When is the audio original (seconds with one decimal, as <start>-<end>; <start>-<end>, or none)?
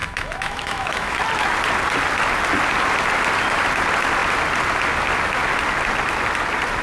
1.2-6.8